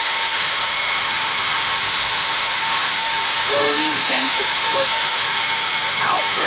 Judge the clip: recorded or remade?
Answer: remade